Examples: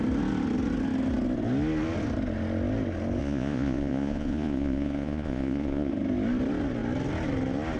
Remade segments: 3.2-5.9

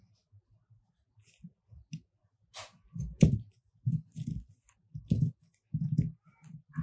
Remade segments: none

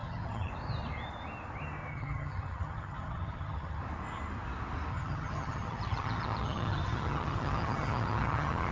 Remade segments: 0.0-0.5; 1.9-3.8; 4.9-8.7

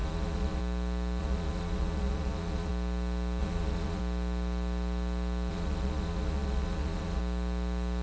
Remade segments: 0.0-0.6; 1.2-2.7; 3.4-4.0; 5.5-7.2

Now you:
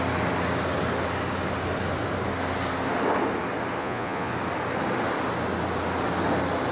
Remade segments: 3.8-4.3

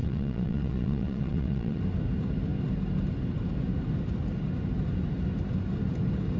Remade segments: 0.0-1.8

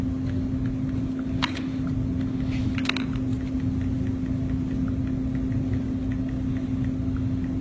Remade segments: none